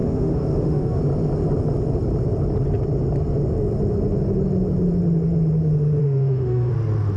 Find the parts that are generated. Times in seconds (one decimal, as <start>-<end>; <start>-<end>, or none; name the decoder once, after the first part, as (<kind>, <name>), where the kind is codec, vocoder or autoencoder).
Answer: 0.0-1.0 (autoencoder, DAC-VAE); 6.0-6.7